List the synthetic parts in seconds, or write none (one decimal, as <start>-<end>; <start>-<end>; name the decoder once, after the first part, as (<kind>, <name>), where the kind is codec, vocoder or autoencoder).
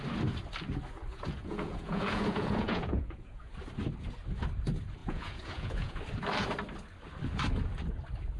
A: 1.1-3.5 (vocoder, Vocos); 5.0-6.0